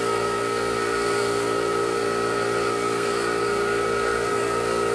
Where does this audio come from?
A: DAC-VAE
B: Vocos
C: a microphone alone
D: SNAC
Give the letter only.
D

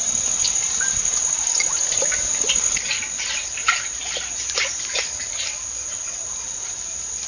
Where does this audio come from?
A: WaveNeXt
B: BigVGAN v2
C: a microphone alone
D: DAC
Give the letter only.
C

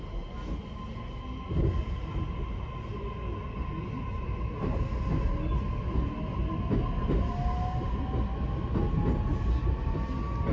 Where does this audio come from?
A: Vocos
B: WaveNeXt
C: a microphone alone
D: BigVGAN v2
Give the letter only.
C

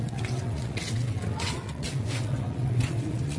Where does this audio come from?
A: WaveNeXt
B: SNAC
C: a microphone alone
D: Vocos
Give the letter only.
A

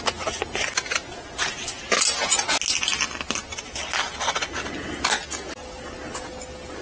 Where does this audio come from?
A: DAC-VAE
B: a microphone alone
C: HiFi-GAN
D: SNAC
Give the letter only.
B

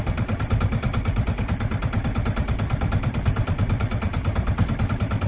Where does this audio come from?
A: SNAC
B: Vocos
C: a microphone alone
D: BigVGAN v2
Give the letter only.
C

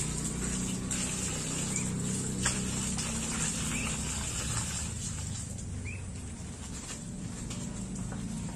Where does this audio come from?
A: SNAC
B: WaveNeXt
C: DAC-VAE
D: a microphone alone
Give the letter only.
D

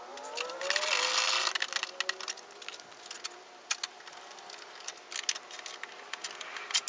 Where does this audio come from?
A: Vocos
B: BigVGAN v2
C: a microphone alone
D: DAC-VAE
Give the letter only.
C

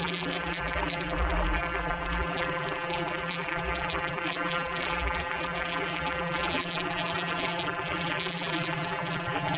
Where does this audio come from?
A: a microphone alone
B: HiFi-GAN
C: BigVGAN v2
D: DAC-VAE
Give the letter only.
C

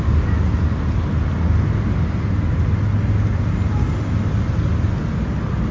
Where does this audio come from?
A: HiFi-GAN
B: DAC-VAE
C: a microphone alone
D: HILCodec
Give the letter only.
C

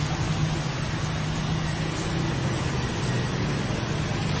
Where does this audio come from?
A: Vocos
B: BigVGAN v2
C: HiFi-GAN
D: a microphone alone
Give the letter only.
D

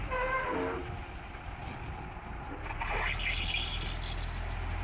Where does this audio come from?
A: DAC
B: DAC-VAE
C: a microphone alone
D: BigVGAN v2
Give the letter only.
C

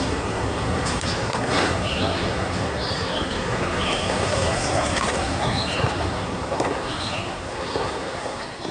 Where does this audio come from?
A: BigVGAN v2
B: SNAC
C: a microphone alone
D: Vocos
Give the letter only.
B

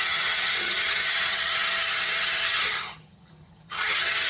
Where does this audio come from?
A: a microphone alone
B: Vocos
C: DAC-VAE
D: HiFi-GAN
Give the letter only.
D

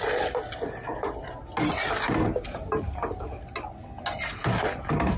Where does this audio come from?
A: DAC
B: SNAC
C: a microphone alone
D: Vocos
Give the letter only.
C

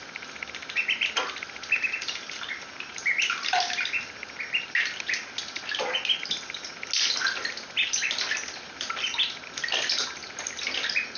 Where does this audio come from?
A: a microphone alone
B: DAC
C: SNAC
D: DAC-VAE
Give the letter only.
A